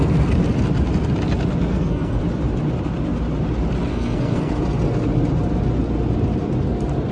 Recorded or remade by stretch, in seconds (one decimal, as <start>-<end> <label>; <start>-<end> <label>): 0.0-1.7 recorded; 1.7-2.2 remade; 2.2-3.9 recorded; 3.9-4.5 remade; 4.5-7.1 recorded